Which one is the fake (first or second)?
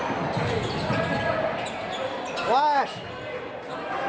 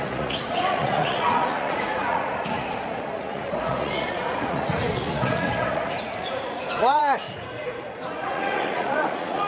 second